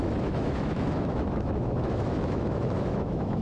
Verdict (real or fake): fake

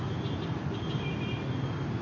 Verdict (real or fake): real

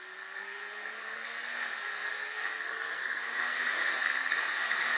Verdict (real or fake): fake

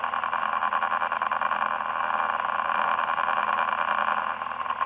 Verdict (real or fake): real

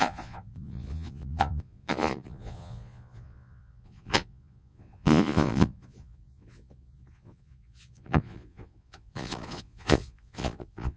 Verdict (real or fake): fake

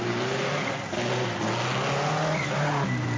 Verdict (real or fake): real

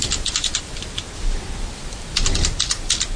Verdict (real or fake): real